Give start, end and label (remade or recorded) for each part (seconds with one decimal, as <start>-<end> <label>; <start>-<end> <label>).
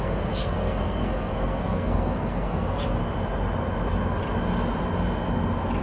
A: 0.0-3.0 remade; 3.0-5.8 recorded